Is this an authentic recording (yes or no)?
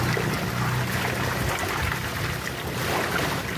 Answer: yes